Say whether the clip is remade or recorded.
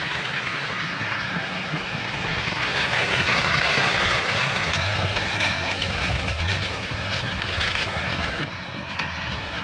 remade